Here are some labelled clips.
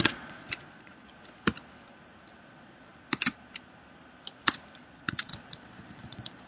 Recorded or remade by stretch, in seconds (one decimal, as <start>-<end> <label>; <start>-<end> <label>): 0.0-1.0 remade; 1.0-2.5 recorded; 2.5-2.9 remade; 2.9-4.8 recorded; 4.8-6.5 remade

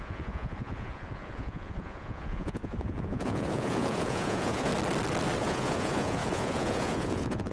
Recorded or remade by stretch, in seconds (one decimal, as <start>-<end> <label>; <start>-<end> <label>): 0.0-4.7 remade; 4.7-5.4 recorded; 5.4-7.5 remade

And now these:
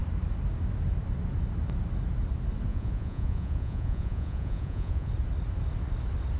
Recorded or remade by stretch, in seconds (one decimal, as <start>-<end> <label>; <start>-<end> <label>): 0.0-2.7 recorded; 2.7-5.1 remade; 5.1-6.4 recorded

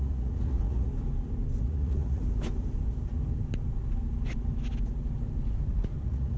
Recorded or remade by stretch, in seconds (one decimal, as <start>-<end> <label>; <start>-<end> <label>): 0.0-0.9 remade; 0.9-1.6 recorded; 1.6-2.2 remade; 2.2-6.0 recorded; 6.0-6.4 remade